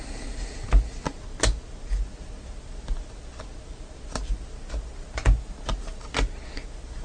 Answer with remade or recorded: recorded